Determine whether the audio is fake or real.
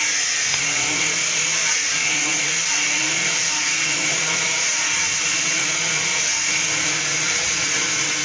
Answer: fake